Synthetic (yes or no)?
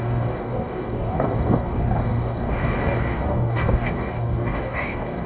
yes